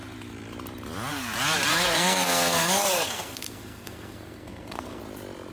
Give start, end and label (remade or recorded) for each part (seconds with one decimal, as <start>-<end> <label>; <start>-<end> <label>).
0.0-1.7 recorded; 1.7-5.0 remade; 5.0-5.5 recorded